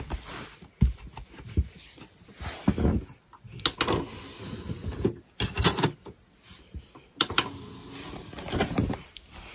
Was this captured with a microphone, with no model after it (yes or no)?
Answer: yes